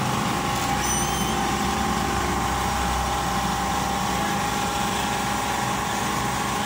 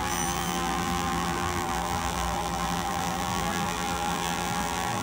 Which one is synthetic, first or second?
second